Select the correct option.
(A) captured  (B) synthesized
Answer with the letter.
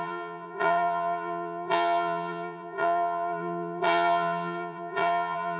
B